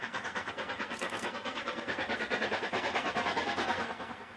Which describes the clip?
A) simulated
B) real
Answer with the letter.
A